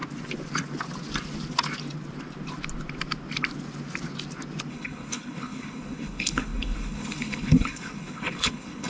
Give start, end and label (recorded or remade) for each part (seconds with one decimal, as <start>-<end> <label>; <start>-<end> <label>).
0.0-4.7 recorded; 4.7-8.9 remade